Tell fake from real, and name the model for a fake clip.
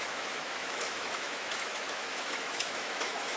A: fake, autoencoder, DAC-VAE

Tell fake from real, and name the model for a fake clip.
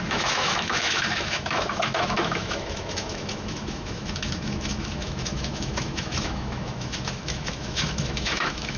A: fake, autoencoder, DAC-VAE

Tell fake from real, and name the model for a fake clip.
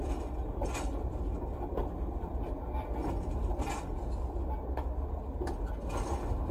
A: real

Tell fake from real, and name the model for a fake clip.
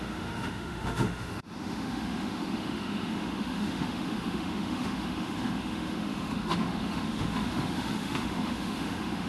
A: fake, autoencoder, DAC-VAE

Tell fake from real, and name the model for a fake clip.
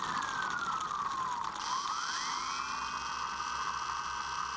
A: real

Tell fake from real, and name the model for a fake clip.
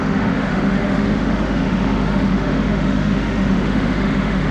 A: fake, autoencoder, DAC-VAE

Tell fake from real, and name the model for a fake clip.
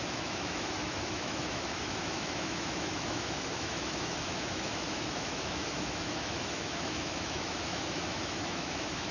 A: fake, autoencoder, DAC-VAE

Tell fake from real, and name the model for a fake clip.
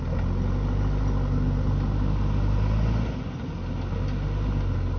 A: real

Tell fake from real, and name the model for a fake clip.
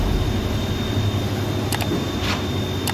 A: real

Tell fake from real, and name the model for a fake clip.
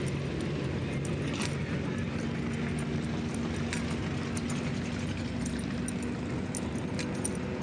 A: real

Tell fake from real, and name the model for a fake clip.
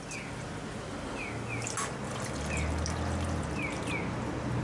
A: real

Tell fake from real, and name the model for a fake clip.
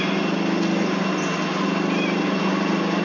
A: real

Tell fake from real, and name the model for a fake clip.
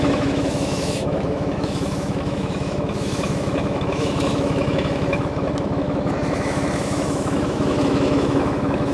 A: fake, autoencoder, DAC-VAE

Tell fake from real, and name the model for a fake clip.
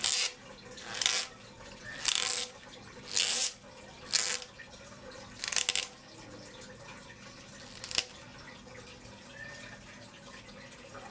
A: real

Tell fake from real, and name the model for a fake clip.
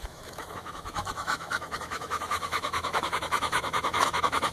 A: fake, autoencoder, DAC-VAE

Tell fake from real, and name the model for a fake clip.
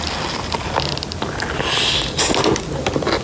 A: real